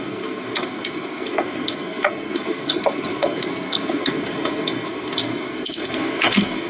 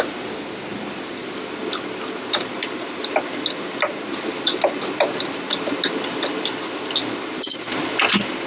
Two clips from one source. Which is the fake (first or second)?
first